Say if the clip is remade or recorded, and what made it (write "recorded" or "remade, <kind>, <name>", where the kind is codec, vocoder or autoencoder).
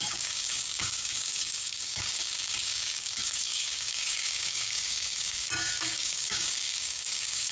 remade, codec, DAC